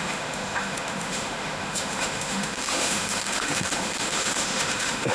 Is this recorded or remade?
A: remade